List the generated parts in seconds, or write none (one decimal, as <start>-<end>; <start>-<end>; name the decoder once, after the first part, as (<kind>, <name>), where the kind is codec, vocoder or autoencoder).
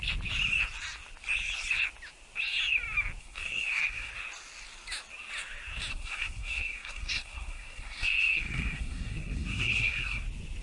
3.2-4.1 (codec, SNAC); 5.9-10.2